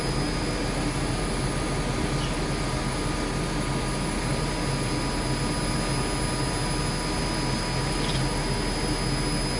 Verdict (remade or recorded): recorded